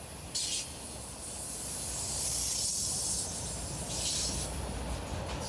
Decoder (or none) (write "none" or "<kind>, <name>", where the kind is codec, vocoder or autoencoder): none